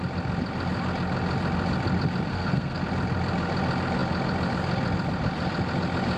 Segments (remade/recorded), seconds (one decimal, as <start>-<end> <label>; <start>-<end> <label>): 0.0-2.3 recorded; 2.3-2.8 remade; 2.8-6.2 recorded